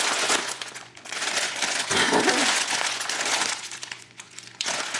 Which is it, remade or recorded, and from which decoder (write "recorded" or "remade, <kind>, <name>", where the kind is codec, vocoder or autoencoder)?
remade, vocoder, Vocos